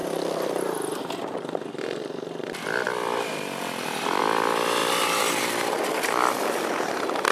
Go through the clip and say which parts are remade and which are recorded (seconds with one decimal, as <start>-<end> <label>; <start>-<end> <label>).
0.0-4.8 recorded; 4.8-6.3 remade; 6.3-7.3 recorded